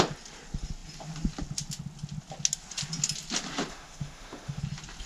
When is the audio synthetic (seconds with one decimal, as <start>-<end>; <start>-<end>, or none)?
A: 3.7-4.6